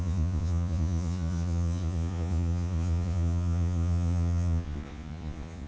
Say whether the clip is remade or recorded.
remade